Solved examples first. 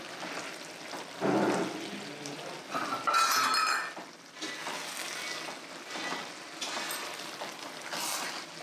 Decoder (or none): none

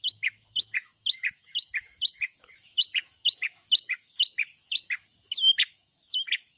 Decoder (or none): autoencoder, DAC-VAE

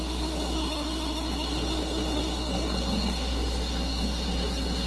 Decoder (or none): codec, SNAC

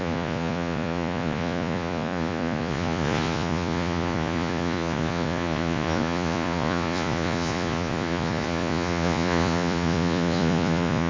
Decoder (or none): vocoder, Vocos